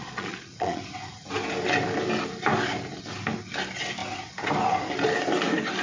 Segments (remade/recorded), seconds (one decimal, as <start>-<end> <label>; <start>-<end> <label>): 0.0-0.8 remade; 0.8-5.8 recorded